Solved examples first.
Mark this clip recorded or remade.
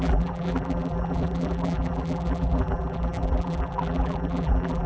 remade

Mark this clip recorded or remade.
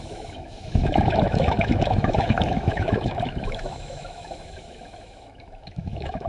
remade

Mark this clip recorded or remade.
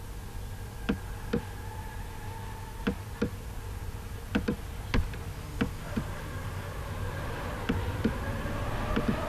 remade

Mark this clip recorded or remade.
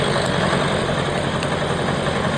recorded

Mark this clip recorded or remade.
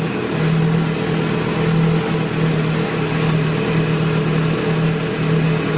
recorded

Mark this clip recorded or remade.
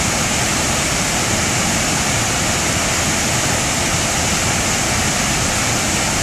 recorded